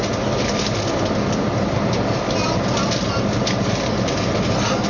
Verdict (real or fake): real